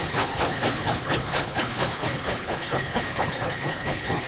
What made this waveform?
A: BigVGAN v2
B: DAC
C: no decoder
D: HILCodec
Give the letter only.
D